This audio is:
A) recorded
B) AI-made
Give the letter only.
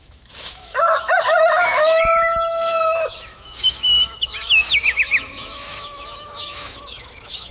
B